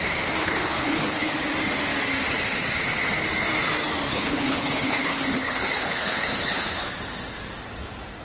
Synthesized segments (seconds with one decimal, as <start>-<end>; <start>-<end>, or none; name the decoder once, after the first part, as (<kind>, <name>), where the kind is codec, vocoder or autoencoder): 0.4-1.3 (codec, HILCodec); 4.1-6.9